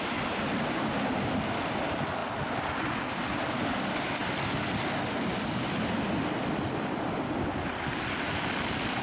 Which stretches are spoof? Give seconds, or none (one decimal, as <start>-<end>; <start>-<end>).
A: none